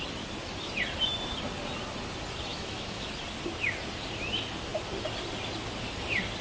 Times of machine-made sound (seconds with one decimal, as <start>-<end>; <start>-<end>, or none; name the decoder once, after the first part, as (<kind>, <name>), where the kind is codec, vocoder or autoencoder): 2.5-3.1 (autoencoder, DAC-VAE)